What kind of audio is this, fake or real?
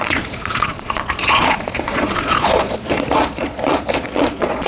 fake